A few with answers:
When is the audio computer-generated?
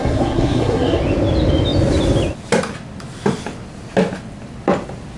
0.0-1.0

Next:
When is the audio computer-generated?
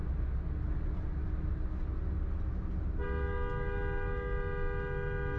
none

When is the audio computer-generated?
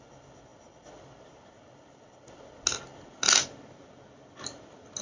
none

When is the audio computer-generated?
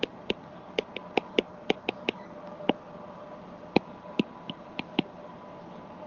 none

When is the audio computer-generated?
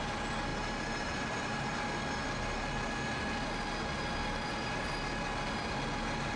0.5-2.0; 4.2-4.9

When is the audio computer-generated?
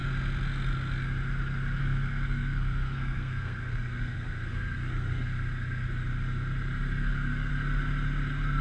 1.8-5.3; 7.0-7.5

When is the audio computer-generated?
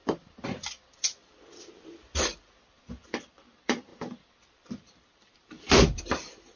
0.7-1.2; 2.7-6.6